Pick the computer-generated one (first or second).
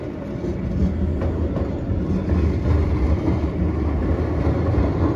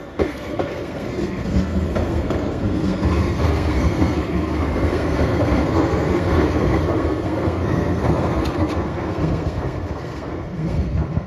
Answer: second